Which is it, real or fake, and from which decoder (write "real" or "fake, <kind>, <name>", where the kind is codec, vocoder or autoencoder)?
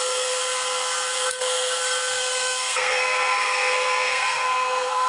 fake, codec, SNAC